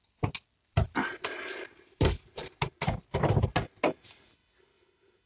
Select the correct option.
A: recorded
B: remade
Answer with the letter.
A